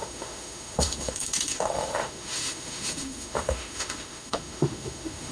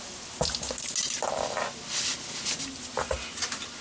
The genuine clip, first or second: second